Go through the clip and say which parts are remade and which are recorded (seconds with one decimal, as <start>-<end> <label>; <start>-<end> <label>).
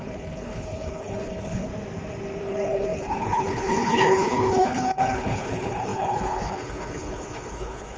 0.0-1.7 remade; 1.7-2.4 recorded; 2.4-8.0 remade